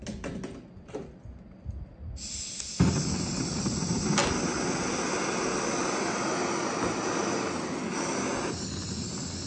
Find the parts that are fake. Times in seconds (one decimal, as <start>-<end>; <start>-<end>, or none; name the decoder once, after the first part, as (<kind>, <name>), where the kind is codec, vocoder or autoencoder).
none

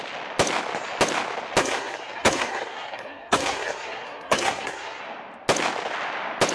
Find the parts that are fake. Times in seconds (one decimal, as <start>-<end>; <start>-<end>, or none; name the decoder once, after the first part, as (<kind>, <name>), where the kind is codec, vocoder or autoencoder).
1.6-5.0 (codec, SNAC)

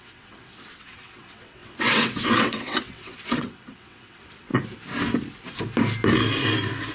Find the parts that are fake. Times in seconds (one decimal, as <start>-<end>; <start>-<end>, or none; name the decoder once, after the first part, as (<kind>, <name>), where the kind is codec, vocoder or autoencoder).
0.0-4.5 (vocoder, WaveNeXt)

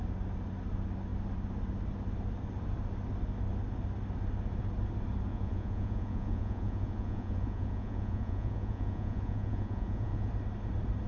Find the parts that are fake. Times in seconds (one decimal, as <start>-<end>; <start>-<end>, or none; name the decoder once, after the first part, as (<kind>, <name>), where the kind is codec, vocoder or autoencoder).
5.3-10.3 (vocoder, Vocos)

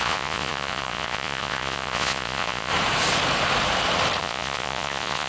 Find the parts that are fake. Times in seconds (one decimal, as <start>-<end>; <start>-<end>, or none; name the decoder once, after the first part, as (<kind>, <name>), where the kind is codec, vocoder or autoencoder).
0.0-2.7 (vocoder, Vocos); 4.2-5.3

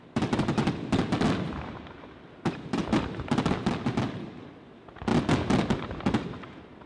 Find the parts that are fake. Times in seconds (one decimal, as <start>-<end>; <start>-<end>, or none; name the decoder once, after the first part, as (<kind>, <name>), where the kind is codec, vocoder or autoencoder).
0.0-2.8 (vocoder, BigVGAN v2); 3.6-5.1; 6.3-6.9